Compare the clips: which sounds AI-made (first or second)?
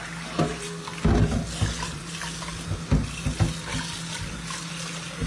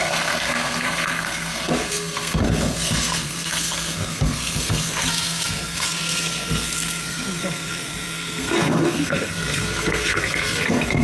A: second